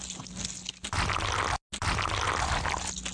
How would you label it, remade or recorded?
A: recorded